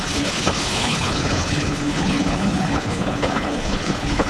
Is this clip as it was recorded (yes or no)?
no